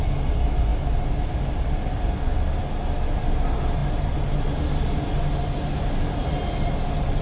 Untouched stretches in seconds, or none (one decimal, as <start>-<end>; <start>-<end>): 0.0-7.2